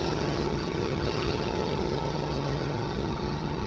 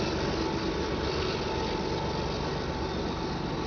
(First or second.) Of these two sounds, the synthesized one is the first